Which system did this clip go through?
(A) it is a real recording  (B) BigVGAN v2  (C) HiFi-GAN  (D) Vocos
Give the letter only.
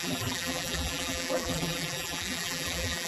B